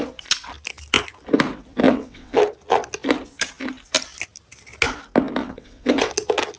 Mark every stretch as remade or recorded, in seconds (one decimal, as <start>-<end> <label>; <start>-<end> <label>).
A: 0.0-1.9 recorded; 1.9-2.4 remade; 2.4-5.4 recorded; 5.4-6.1 remade; 6.1-6.6 recorded